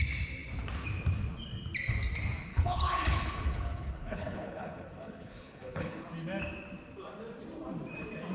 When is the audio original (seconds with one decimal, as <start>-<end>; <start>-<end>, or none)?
0.0-2.5; 6.0-8.3